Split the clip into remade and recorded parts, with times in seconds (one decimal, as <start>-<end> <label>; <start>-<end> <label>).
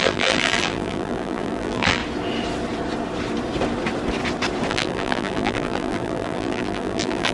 0.0-2.0 remade; 2.0-4.7 recorded; 4.7-7.3 remade